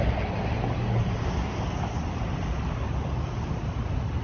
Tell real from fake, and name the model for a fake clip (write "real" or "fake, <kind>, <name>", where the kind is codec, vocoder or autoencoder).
real